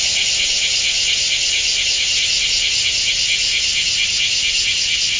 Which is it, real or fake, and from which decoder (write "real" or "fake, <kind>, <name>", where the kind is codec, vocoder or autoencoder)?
real